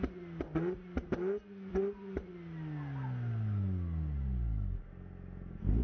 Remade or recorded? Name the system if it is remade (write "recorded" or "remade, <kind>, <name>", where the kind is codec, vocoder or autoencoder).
recorded